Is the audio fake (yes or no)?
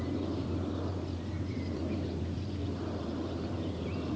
yes